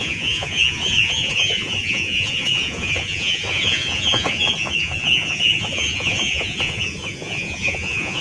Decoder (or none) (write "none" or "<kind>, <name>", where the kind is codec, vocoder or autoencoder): vocoder, Vocos